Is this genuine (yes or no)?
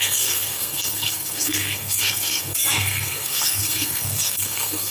no